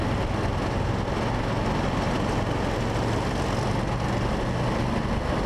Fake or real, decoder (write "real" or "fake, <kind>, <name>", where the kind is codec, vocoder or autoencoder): real